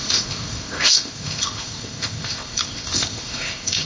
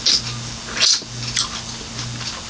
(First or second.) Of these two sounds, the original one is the second